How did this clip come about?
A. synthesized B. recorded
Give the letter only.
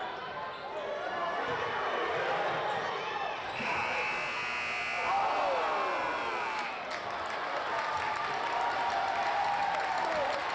B